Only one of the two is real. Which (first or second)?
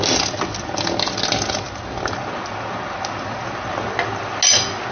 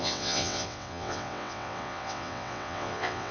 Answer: first